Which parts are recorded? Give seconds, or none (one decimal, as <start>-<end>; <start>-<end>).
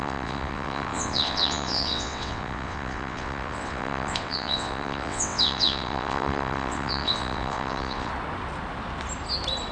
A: 8.1-9.7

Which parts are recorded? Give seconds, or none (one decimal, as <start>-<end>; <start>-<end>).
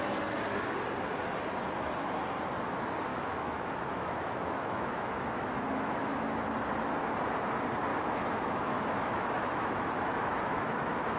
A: 0.0-3.1; 6.3-7.9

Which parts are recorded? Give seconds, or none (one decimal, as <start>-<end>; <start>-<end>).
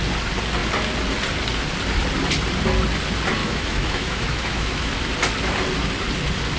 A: 0.0-3.4; 4.9-6.6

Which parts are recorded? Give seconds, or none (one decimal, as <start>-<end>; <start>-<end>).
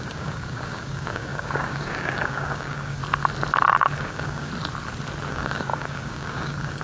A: 3.0-3.7; 4.5-5.3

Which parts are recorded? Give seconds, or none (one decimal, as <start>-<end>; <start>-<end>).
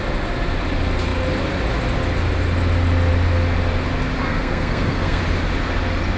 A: 0.0-4.3; 5.2-6.2